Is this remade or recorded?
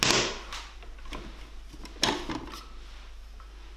recorded